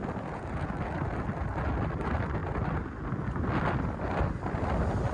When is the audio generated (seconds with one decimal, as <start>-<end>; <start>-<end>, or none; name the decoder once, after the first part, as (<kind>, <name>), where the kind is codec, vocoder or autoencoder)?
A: none